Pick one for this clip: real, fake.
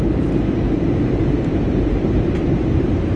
fake